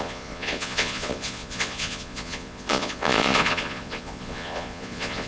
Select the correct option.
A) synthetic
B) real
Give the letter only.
A